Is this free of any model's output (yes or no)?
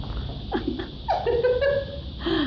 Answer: yes